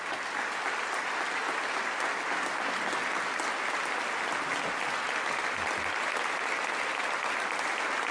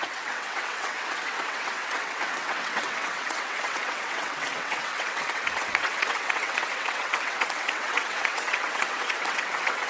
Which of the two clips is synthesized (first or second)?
second